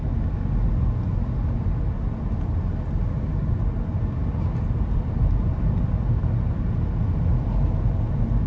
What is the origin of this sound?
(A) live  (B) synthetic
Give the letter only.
A